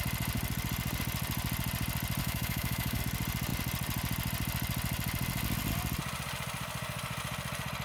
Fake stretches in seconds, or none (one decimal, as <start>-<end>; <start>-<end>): 2.2-3.0